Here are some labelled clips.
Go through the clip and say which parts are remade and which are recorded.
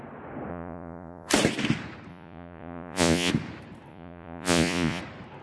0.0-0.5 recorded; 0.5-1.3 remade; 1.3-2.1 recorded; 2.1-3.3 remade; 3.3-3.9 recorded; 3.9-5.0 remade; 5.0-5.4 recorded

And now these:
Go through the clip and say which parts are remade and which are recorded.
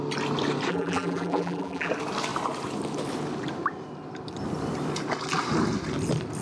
0.0-0.7 recorded; 0.7-1.9 remade; 1.9-6.4 recorded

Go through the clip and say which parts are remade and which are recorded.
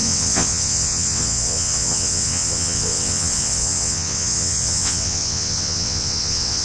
0.0-6.6 remade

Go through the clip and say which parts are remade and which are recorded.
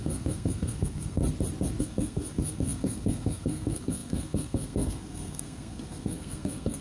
0.0-1.2 remade; 1.2-1.8 recorded; 1.8-6.8 remade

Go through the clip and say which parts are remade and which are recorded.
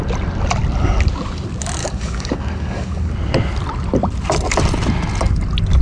0.0-1.8 recorded; 1.8-3.1 remade; 3.1-5.8 recorded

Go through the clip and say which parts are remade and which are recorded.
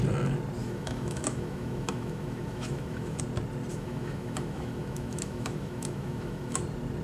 0.0-0.6 recorded; 0.6-3.2 remade; 3.2-3.7 recorded; 3.7-6.6 remade; 6.6-7.0 recorded